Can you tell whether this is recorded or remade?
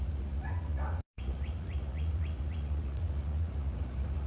remade